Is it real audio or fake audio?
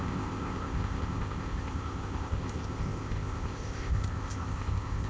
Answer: fake